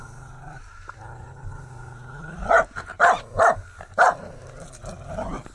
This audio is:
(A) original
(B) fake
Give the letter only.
A